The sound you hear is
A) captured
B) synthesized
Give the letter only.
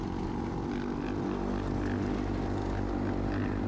A